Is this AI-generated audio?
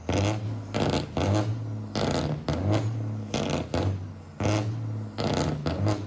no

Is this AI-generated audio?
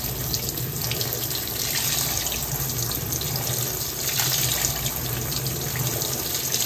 no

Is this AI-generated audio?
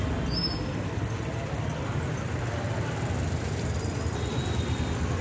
no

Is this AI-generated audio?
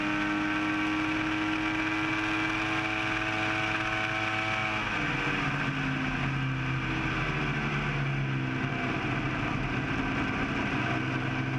no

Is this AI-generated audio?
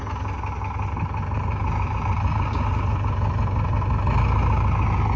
no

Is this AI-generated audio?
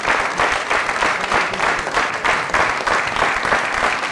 no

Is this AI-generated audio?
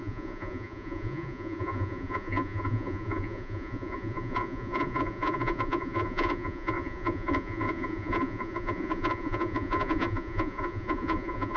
yes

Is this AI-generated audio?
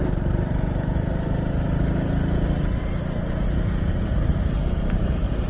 no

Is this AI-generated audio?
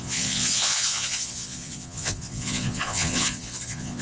yes